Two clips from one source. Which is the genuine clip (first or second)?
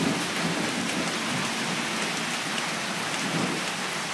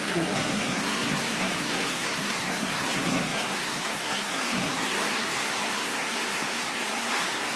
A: first